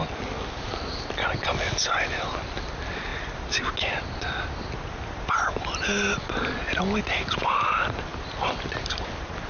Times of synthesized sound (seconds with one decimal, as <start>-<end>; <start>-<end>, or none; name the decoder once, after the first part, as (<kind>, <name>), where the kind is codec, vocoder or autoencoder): none